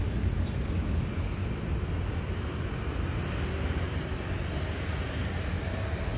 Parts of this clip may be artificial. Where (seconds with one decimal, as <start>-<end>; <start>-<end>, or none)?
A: none